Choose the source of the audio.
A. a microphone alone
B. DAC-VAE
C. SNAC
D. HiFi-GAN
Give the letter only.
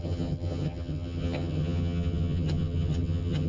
D